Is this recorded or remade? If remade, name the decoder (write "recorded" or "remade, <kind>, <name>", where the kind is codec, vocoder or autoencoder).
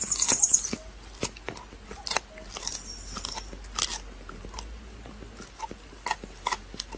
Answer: recorded